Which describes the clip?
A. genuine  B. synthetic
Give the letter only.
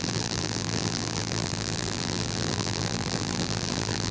B